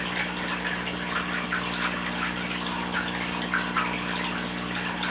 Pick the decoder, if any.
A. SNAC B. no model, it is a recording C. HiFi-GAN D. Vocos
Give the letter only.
B